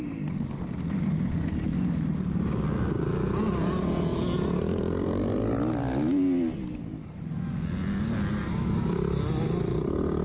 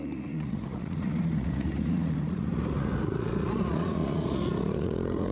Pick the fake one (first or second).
second